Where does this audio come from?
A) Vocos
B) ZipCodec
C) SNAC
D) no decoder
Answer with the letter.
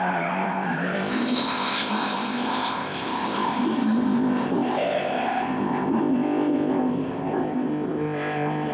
B